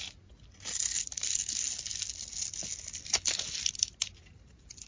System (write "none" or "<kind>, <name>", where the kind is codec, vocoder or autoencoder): none